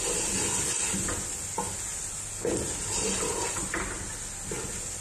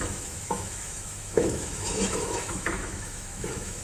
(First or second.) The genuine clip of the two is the first